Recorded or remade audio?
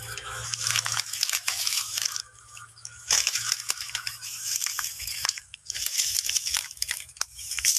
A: remade